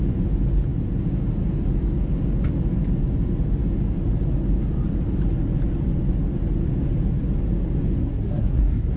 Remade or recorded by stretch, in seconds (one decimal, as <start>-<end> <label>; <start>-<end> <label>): 0.0-8.0 recorded; 8.0-9.0 remade